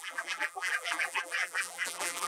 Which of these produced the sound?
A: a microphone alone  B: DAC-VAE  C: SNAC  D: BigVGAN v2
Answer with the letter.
D